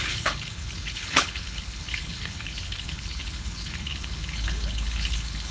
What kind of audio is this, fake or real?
fake